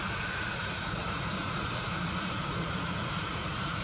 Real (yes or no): no